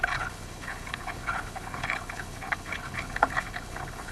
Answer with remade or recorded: remade